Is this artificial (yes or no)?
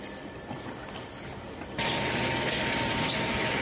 no